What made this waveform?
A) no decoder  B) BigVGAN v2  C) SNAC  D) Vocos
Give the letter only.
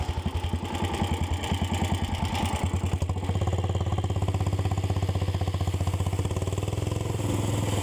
A